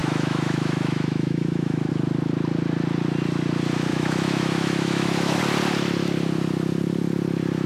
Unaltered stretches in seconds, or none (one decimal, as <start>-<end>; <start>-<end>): 1.9-3.9; 5.4-7.7